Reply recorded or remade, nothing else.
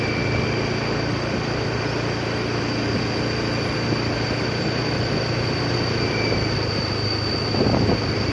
remade